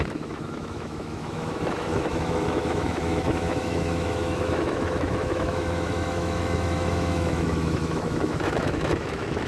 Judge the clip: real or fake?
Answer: fake